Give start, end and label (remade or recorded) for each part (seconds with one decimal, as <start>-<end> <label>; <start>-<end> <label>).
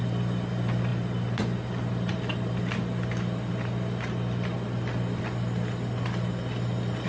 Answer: 0.0-7.1 recorded